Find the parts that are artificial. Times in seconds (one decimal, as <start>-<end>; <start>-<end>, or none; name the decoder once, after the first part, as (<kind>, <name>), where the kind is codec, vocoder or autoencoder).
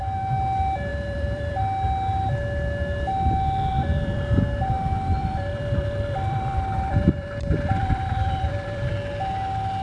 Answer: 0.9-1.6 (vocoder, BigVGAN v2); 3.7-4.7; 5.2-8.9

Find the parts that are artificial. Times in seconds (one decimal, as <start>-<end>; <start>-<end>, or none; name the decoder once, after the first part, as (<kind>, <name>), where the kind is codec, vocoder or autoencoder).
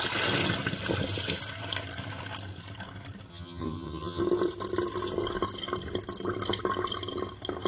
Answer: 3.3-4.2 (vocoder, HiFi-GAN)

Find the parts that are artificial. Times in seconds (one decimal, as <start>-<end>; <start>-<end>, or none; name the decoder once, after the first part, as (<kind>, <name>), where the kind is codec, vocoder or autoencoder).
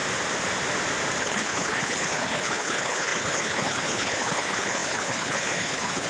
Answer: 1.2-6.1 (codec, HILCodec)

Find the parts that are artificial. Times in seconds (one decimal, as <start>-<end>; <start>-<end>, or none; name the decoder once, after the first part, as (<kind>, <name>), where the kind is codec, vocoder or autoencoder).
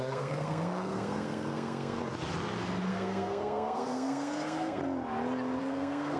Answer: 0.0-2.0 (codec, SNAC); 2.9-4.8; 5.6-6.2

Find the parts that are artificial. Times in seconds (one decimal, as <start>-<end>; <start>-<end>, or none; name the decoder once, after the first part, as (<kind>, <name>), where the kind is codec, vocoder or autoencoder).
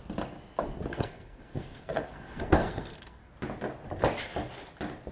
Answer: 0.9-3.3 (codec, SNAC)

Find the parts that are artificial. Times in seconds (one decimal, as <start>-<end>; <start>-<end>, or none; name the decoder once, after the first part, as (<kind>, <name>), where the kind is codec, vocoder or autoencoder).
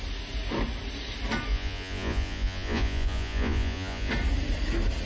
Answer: 1.5-4.1 (vocoder, Vocos)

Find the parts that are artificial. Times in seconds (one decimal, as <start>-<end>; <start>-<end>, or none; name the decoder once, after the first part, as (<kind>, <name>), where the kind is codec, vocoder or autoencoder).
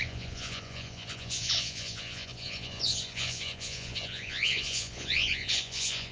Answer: 0.0-6.1 (vocoder, Vocos)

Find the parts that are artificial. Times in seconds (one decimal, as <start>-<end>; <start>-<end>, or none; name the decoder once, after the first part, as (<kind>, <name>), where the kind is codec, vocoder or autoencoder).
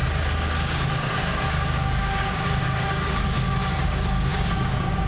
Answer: 0.6-5.1 (codec, DAC)